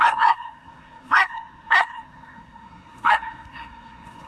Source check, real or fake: fake